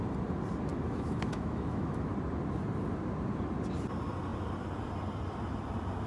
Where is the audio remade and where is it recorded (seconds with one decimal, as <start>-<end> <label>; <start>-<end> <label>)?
0.0-0.7 recorded; 0.7-2.1 remade; 2.1-6.1 recorded